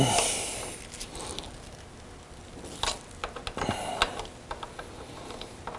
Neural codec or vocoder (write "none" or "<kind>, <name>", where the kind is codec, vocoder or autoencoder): none